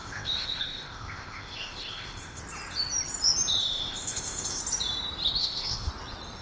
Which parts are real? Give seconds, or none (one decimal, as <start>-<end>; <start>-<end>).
2.4-3.6; 4.6-5.4; 5.9-6.4

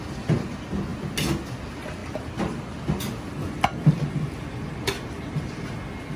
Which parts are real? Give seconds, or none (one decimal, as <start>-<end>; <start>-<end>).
0.0-6.2

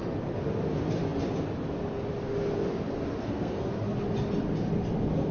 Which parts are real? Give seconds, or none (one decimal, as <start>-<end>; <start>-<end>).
0.0-3.2; 3.7-5.3

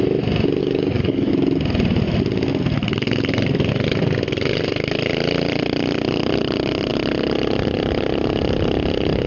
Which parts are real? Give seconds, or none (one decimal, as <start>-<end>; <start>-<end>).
0.0-0.6; 1.3-9.3